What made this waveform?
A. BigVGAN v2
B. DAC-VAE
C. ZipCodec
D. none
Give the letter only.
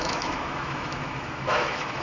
B